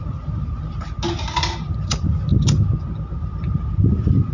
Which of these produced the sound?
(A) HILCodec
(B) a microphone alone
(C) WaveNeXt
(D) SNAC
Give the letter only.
B